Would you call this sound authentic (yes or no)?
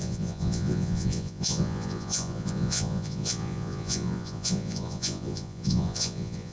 no